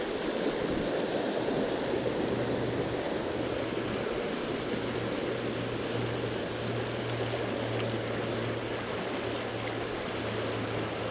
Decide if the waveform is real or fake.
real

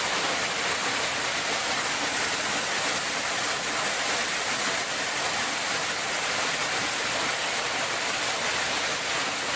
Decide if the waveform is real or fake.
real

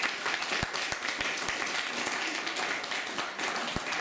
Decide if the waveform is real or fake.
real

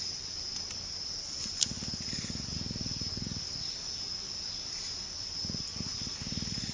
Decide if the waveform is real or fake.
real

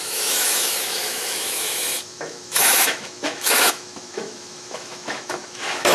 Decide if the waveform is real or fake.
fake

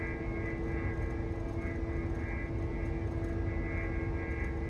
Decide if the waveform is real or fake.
real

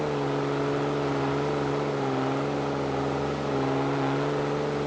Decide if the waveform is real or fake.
real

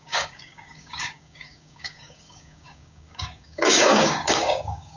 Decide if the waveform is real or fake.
fake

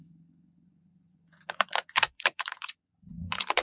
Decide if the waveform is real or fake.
fake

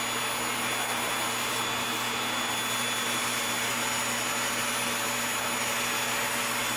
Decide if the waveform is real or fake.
real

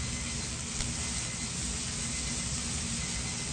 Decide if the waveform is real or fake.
real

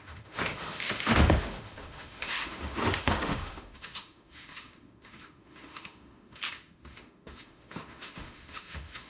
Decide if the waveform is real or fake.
fake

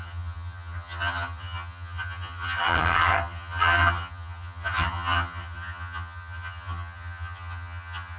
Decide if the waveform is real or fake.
fake